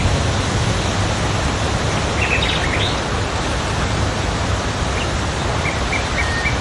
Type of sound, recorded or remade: recorded